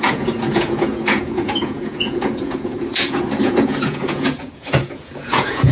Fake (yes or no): yes